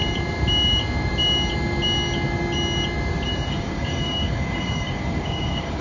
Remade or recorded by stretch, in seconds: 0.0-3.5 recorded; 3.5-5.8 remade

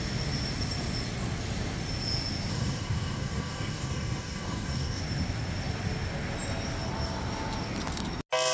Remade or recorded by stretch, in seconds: 0.0-2.5 recorded; 2.5-5.0 remade; 5.0-8.5 recorded

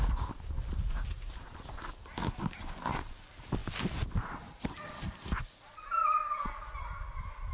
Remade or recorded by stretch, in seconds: 0.0-7.5 recorded

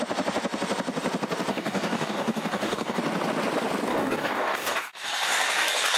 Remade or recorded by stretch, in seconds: 0.0-1.5 recorded; 1.5-3.0 remade; 3.0-3.9 recorded; 3.9-6.0 remade

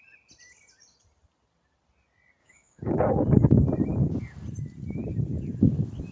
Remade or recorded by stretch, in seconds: 0.0-2.4 recorded; 2.4-3.0 remade; 3.0-6.1 recorded

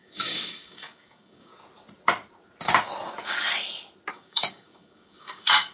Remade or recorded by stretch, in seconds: 0.0-1.5 remade; 1.5-4.1 recorded; 4.1-5.7 remade

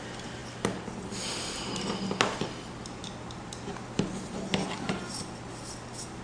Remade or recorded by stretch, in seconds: 0.0-6.2 recorded